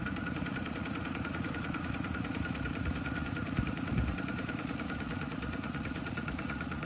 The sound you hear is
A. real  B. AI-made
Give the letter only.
B